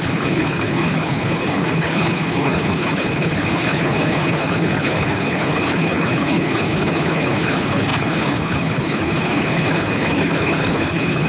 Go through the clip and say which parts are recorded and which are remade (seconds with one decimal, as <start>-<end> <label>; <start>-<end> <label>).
0.0-11.3 remade